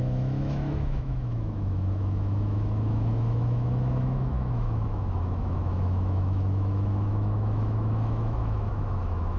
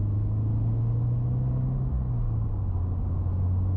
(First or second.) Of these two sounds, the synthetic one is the first